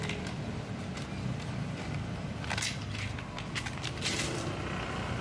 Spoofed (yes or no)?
no